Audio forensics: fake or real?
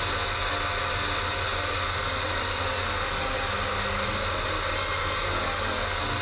real